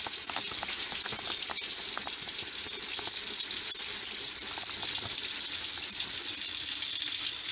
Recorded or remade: remade